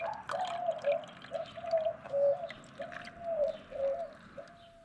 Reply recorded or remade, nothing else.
recorded